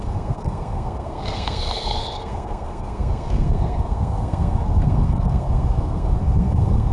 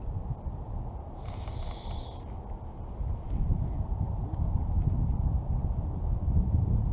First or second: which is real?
second